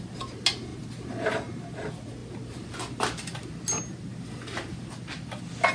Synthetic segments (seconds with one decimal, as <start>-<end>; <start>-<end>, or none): none